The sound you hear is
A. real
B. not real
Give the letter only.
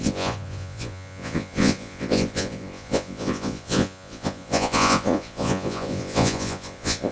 B